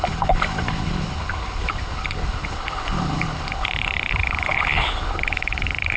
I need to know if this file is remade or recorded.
remade